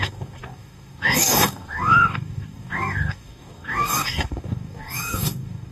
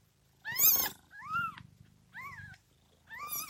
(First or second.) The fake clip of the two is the first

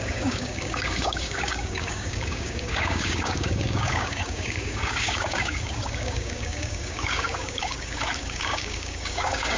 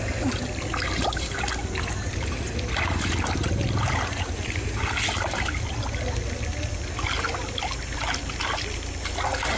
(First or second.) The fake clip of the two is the first